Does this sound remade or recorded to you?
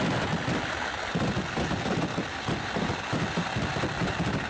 recorded